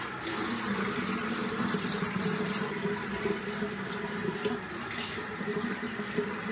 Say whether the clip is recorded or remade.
recorded